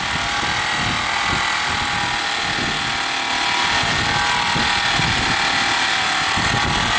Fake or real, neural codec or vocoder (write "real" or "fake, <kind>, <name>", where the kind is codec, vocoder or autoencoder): real